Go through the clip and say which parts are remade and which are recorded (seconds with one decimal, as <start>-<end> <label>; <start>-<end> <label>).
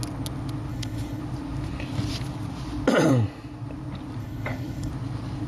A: 0.0-0.7 recorded; 0.7-1.2 remade; 1.2-4.2 recorded; 4.2-4.9 remade; 4.9-5.5 recorded